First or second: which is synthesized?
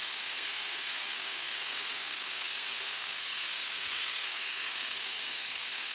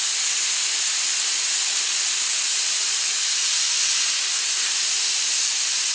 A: first